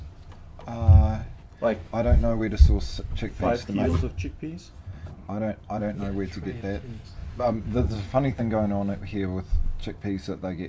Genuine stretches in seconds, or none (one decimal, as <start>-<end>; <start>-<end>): 0.0-1.2; 6.0-7.2; 8.4-10.7